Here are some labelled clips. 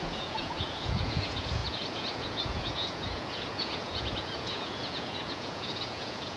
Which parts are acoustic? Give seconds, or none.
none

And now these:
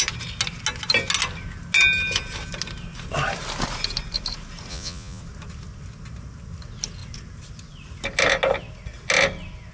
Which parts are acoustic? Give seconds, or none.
0.0-4.7; 5.2-9.7

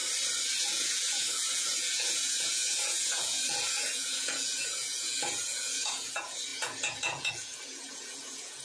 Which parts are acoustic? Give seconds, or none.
0.0-0.6

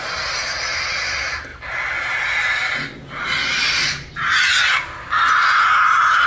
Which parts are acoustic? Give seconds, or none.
0.0-6.3

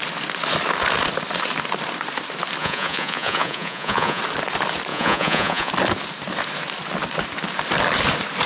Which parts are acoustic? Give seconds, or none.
0.0-2.6; 4.2-4.9; 5.7-8.5